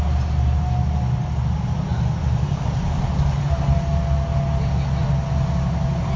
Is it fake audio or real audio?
real